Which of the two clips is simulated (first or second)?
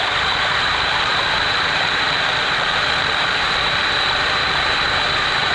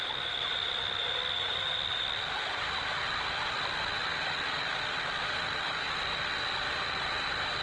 first